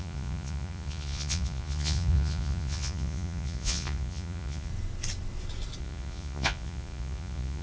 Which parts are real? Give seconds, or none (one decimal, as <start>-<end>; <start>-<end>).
4.7-5.8